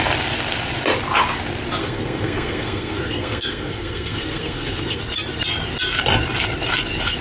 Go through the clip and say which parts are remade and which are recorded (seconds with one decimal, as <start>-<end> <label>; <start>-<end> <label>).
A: 0.0-1.8 recorded; 1.8-5.0 remade; 5.0-7.2 recorded